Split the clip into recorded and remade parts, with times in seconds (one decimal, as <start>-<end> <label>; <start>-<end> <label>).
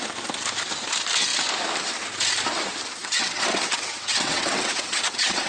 0.0-3.0 recorded; 3.0-5.5 remade